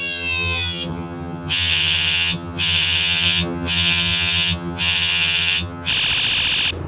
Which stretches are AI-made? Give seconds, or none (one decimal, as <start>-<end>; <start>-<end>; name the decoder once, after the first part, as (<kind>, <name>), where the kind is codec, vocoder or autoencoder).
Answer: 0.0-5.9 (vocoder, HiFi-GAN)